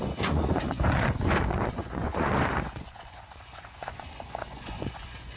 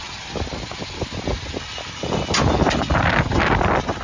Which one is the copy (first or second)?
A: first